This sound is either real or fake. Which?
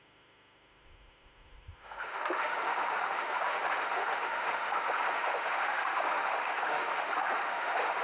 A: fake